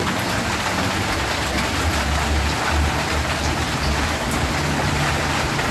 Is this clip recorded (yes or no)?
yes